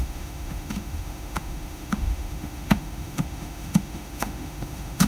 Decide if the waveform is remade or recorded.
remade